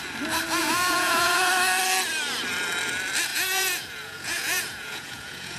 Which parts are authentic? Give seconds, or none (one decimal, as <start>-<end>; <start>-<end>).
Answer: 0.0-0.6; 1.5-3.3